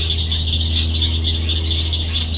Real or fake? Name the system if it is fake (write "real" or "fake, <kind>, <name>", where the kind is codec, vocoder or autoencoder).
real